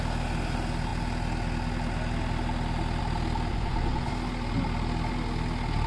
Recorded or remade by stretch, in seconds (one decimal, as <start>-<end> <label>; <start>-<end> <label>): 0.0-3.5 recorded; 3.5-4.1 remade; 4.1-5.9 recorded